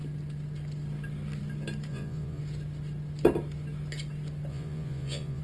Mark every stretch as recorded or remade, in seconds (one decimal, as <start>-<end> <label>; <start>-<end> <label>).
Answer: 0.0-1.9 recorded; 1.9-2.4 remade; 2.4-4.5 recorded; 4.5-5.4 remade